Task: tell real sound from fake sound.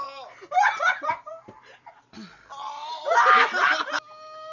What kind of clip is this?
real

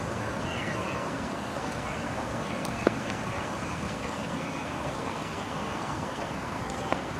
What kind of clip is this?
fake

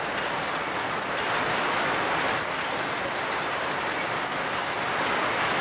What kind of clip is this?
real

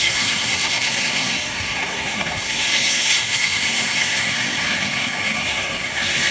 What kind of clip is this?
fake